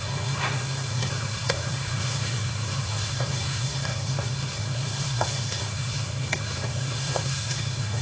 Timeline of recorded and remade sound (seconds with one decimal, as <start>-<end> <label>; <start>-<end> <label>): 0.0-8.0 remade